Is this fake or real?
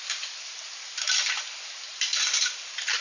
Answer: fake